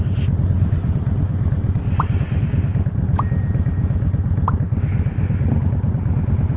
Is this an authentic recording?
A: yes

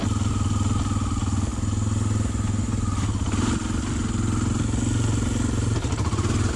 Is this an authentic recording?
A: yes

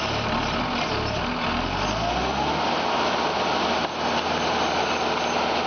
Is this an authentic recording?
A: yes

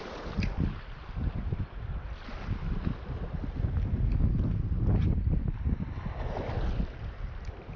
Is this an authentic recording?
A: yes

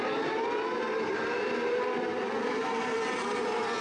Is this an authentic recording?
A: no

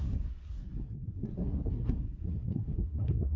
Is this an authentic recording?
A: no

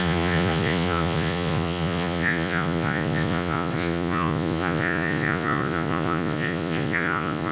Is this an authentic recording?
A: no